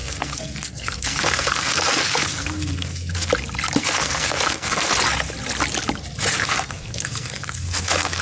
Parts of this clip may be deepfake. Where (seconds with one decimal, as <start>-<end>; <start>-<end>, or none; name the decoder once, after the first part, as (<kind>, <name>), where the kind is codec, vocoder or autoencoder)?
0.0-3.3 (codec, SNAC); 3.8-4.9; 6.3-8.2